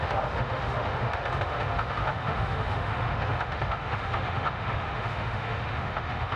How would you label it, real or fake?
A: fake